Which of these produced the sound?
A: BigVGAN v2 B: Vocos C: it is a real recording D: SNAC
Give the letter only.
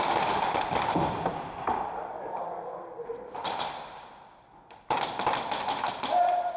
A